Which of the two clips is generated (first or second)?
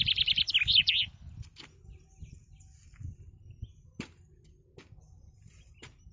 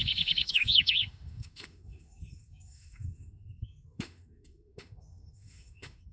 second